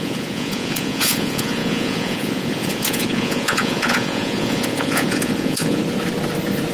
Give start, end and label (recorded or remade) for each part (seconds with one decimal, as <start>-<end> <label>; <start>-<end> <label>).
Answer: 0.0-5.8 remade; 5.8-6.7 recorded